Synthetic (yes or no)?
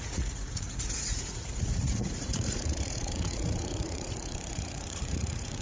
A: yes